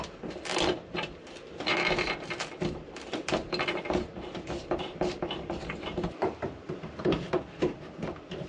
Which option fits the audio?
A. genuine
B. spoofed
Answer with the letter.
B